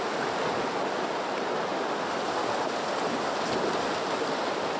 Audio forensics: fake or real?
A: real